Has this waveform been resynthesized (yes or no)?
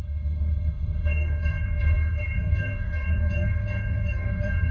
yes